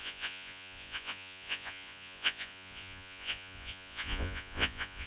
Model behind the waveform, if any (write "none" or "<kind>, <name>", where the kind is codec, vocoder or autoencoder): vocoder, Vocos